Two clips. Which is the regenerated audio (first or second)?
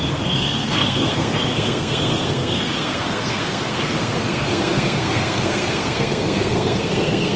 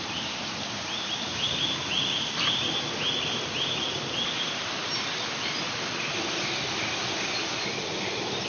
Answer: first